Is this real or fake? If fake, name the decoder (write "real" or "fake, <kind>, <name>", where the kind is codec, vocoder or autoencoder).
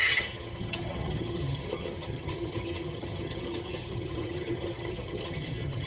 fake, vocoder, HiFi-GAN